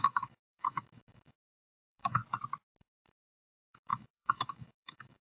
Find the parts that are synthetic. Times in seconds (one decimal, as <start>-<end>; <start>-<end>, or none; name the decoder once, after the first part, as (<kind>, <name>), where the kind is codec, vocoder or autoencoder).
0.0-2.2 (autoencoder, DAC-VAE); 2.8-5.3